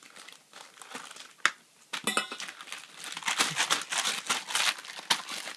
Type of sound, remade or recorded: recorded